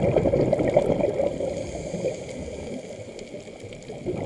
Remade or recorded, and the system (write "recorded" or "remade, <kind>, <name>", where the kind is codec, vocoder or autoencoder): remade, vocoder, BigVGAN v2